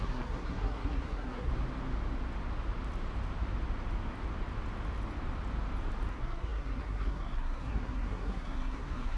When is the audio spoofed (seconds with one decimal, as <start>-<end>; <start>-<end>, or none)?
0.0-1.5; 6.1-9.2